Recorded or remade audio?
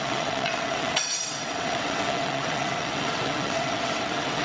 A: remade